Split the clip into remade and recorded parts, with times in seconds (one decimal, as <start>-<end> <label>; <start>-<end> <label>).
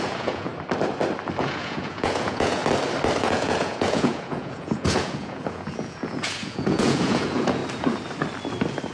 0.0-0.5 remade; 0.5-1.4 recorded; 1.4-2.6 remade; 2.6-3.2 recorded; 3.2-7.6 remade; 7.6-8.9 recorded